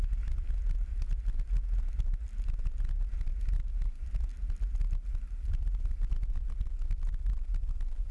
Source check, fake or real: real